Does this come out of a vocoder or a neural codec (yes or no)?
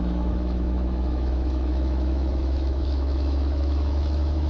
yes